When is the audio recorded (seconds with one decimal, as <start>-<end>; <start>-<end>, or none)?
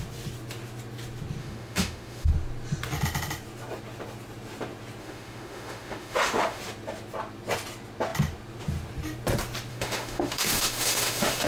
0.0-1.4; 2.3-5.0; 6.6-9.7